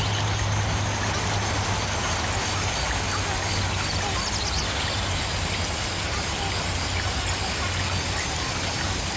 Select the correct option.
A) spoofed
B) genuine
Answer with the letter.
B